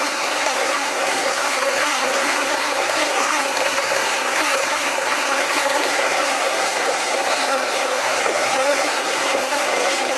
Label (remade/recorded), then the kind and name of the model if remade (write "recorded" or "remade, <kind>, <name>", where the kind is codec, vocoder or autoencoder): remade, codec, SNAC